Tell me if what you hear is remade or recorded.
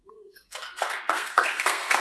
remade